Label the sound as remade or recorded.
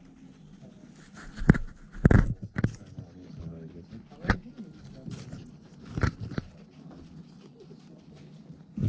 recorded